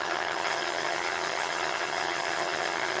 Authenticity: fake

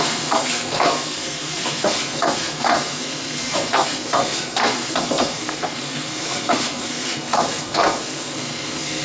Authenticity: fake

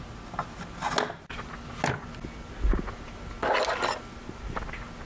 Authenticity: real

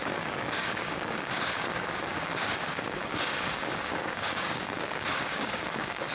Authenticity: fake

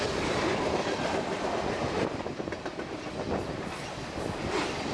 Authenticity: real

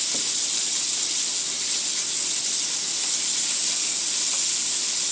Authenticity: real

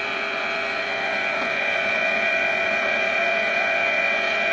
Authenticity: fake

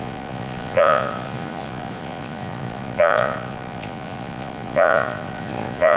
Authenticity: fake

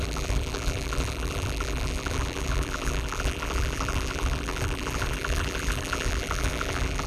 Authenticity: fake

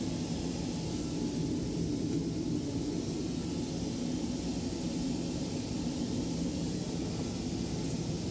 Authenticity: real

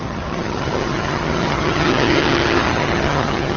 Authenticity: fake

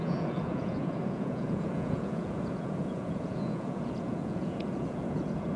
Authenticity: fake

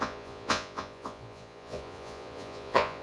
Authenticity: fake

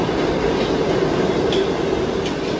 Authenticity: real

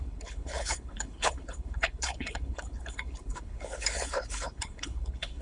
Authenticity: fake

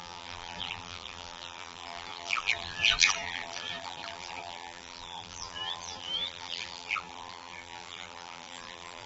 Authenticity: fake